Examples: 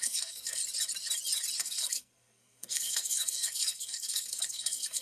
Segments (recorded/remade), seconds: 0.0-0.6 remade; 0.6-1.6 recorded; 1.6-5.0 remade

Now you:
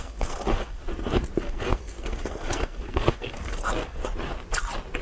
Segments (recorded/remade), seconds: 0.0-0.8 remade; 0.8-1.4 recorded; 1.4-4.0 remade; 4.0-5.0 recorded

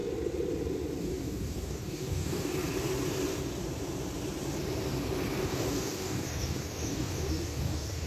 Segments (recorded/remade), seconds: 0.0-1.0 recorded; 1.0-2.5 remade; 2.5-5.4 recorded; 5.4-8.1 remade

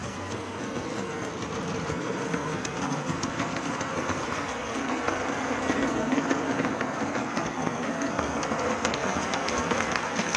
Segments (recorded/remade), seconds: 0.0-1.3 remade; 1.3-1.9 recorded; 1.9-10.4 remade

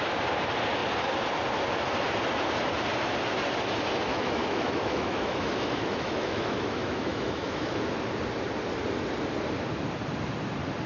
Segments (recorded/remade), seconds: 0.0-4.1 recorded; 4.1-7.8 remade; 7.8-10.9 recorded